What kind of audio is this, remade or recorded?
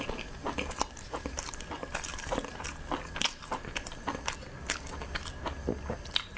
recorded